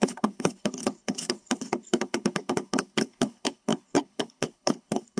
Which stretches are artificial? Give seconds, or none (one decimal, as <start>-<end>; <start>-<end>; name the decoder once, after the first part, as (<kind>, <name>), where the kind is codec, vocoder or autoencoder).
0.0-5.2 (codec, HILCodec)